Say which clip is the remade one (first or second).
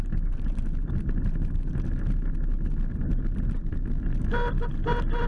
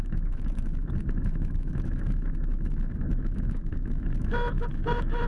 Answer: second